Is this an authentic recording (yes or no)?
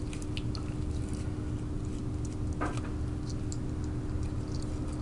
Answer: yes